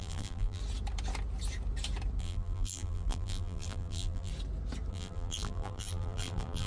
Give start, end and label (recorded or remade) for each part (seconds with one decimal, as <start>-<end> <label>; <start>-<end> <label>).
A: 0.0-0.6 remade; 0.6-2.2 recorded; 2.2-4.3 remade; 4.3-4.9 recorded; 4.9-6.7 remade